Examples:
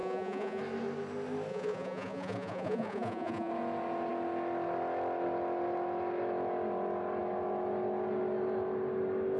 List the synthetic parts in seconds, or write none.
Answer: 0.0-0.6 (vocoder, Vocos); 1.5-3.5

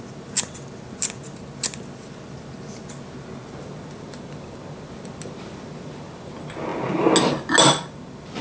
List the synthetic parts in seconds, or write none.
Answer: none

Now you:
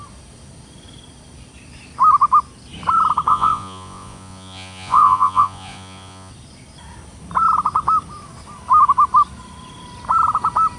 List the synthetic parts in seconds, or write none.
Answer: 3.3-6.3 (vocoder, Vocos)

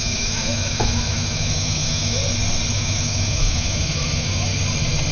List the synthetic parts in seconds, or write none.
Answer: 0.0-2.2 (autoencoder, DAC-VAE); 2.7-4.5

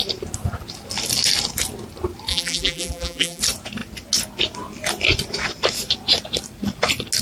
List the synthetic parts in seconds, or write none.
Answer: 2.3-3.4 (vocoder, BigVGAN v2)

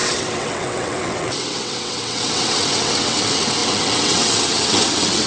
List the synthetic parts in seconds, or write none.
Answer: 0.0-5.3 (vocoder, WaveNeXt)

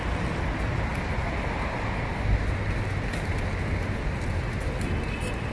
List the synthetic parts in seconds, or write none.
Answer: none

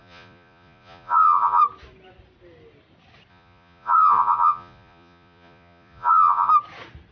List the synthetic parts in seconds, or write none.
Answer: 0.0-1.6 (vocoder, Vocos); 3.3-6.5